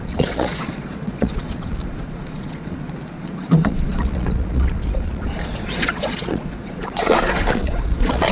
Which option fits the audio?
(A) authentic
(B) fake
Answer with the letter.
B